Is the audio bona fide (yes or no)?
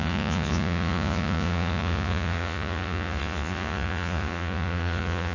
no